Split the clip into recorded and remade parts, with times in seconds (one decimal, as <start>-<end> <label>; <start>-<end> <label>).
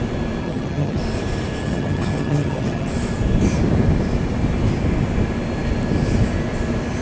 0.0-0.4 recorded; 0.4-1.0 remade; 1.0-1.6 recorded; 1.6-2.9 remade; 2.9-7.0 recorded